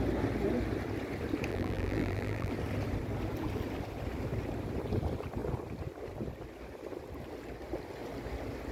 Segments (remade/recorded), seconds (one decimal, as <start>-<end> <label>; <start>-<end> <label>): 0.0-1.5 recorded; 1.5-2.5 remade; 2.5-8.7 recorded